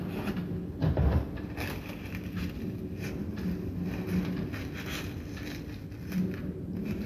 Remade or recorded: recorded